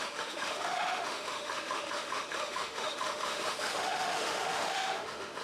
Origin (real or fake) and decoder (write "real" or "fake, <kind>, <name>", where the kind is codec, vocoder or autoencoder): fake, autoencoder, DAC-VAE